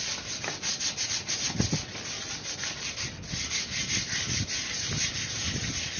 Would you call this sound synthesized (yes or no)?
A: no